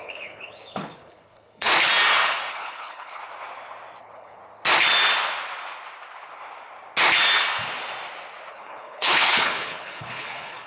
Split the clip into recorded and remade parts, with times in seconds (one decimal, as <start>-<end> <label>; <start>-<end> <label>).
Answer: 0.0-1.7 remade; 1.7-2.5 recorded; 2.5-3.2 remade; 3.2-4.0 recorded; 4.0-4.4 remade; 4.4-8.5 recorded; 8.5-10.7 remade